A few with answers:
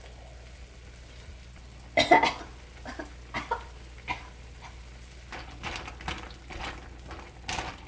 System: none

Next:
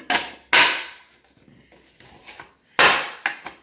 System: none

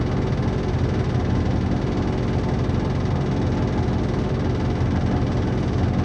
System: none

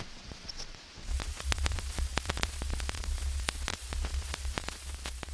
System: vocoder, Vocos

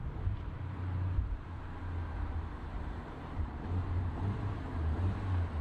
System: vocoder, BigVGAN v2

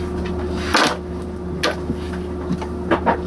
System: none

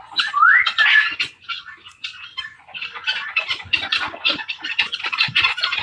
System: vocoder, Vocos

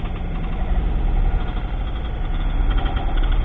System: none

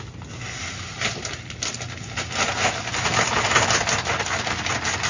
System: none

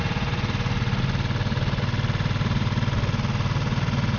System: none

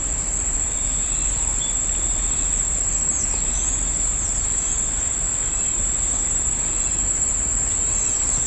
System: vocoder, BigVGAN v2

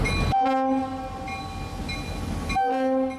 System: none